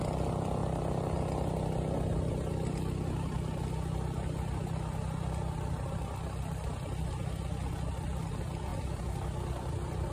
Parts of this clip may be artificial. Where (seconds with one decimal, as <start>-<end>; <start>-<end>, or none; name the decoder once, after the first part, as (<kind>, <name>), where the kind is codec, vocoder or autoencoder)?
none